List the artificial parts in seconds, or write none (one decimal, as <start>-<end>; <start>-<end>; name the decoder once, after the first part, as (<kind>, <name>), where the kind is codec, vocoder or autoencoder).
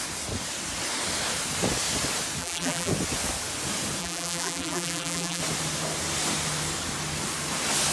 2.4-2.9 (vocoder, BigVGAN v2); 4.0-5.4